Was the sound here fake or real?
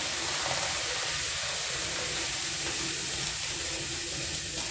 real